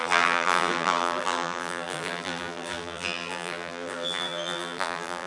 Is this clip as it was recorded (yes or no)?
no